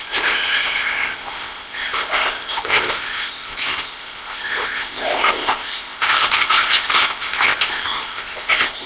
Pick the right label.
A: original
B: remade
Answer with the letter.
B